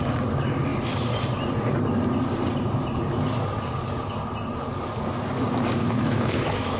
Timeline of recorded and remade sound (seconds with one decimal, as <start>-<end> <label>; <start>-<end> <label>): 0.0-5.8 recorded; 5.8-6.8 remade